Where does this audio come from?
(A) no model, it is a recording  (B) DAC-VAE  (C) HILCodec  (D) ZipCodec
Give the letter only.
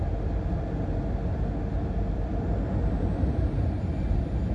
A